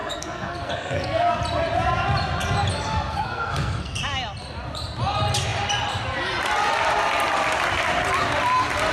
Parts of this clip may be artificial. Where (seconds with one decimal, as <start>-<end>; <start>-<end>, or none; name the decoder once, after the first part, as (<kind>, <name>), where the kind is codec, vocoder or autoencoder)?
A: 0.0-1.4 (codec, SNAC); 2.7-4.0